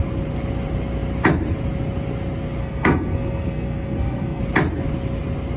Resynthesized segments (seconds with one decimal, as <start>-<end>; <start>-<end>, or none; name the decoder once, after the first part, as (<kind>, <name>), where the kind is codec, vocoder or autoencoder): 2.6-4.4 (codec, SNAC)